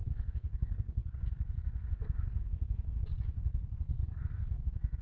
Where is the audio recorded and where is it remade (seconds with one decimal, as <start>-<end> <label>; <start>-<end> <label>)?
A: 0.0-3.0 remade; 3.0-3.9 recorded; 3.9-4.6 remade; 4.6-5.0 recorded